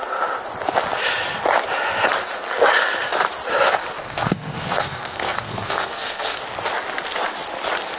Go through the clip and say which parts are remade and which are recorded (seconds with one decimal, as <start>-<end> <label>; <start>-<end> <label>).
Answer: 0.0-4.0 recorded; 4.0-6.4 remade; 6.4-8.0 recorded